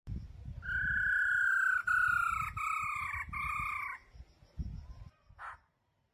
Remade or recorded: recorded